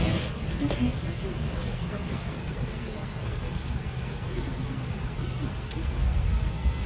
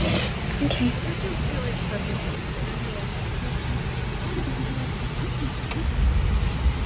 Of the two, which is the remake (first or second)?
first